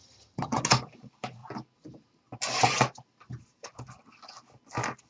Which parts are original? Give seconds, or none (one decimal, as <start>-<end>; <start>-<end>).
0.6-5.1